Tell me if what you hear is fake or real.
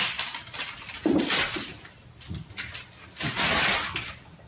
real